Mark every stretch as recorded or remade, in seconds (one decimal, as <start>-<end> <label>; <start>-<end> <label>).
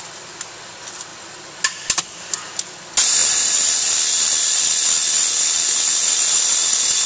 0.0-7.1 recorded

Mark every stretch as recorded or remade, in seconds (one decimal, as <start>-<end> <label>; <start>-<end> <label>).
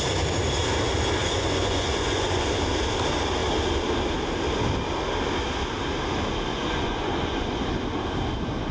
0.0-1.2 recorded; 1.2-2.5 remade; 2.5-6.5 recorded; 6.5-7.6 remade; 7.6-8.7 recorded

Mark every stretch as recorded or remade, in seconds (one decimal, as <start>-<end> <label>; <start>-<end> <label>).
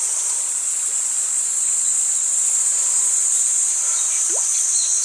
0.0-3.7 remade; 3.7-4.4 recorded; 4.4-5.0 remade